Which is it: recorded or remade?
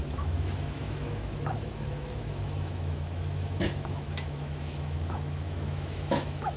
remade